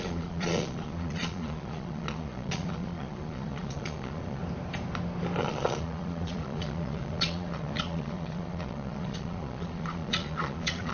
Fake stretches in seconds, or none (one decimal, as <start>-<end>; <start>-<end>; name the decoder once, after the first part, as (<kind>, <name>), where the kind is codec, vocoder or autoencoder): 0.0-4.4 (vocoder, Vocos); 5.4-10.9